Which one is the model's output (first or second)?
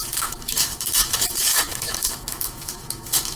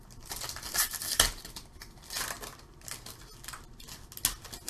first